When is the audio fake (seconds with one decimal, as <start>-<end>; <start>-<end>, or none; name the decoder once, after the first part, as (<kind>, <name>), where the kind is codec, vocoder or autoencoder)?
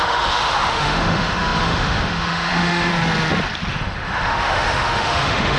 0.0-2.9 (autoencoder, DAC-VAE); 3.7-5.6